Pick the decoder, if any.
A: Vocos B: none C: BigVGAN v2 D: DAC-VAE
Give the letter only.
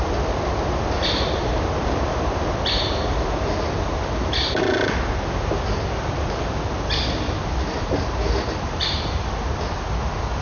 B